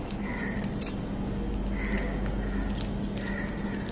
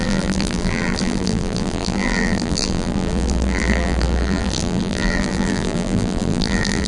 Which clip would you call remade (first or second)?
second